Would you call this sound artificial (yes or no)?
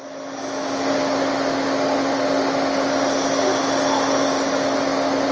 no